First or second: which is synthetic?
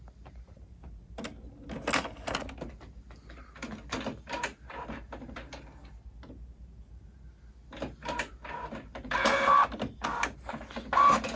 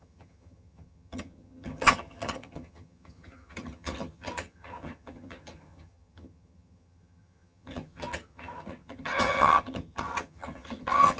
second